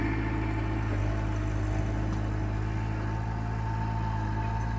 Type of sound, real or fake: real